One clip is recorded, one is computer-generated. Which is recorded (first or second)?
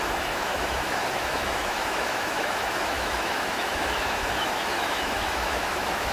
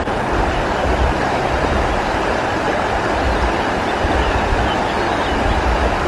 second